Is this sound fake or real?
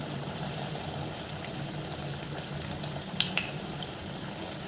fake